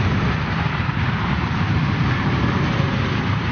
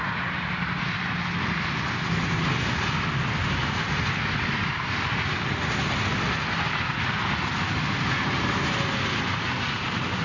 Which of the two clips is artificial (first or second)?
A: first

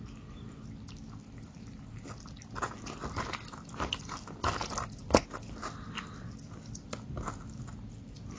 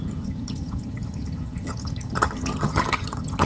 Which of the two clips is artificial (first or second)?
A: second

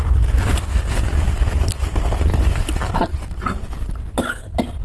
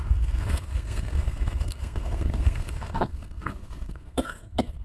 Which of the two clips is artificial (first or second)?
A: second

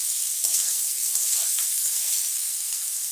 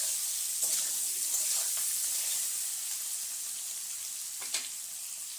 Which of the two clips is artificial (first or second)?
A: first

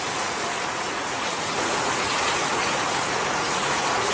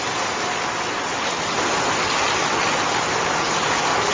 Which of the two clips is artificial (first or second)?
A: first